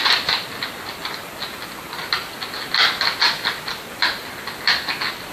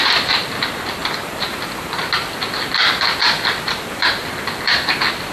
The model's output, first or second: second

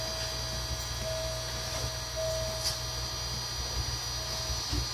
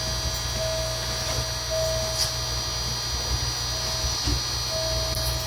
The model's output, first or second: first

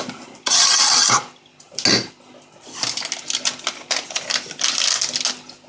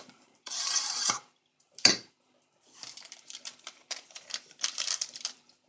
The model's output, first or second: second